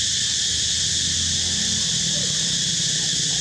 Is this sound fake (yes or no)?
no